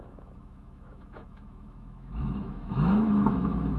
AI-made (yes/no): yes